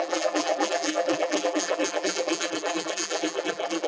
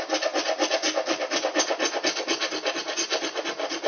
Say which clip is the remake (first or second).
first